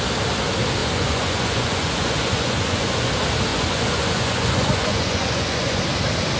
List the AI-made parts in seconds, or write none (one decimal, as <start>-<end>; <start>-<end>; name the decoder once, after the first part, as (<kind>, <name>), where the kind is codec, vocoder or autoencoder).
0.8-3.1 (vocoder, Vocos); 3.5-5.8